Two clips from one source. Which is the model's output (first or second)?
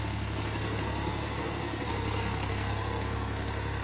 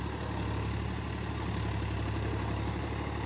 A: first